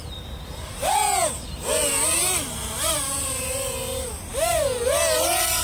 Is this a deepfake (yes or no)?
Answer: no